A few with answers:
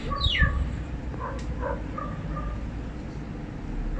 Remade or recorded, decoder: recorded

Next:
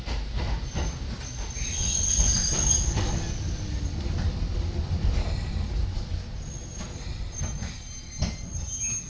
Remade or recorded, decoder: recorded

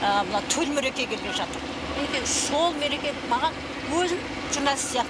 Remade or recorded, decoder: recorded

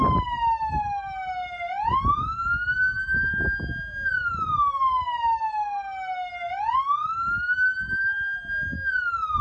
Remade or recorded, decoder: recorded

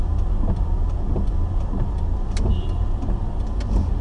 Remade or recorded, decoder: recorded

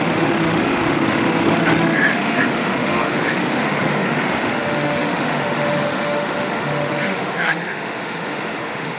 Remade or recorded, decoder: remade, autoencoder, DAC-VAE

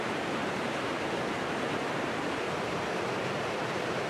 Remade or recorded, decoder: remade, vocoder, BigVGAN v2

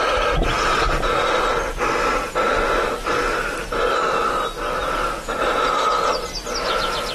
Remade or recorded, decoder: recorded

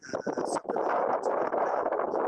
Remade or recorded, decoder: recorded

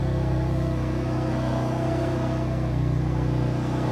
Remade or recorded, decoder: remade, codec, SNAC